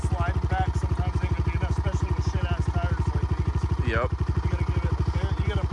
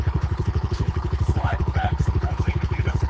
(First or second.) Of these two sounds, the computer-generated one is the second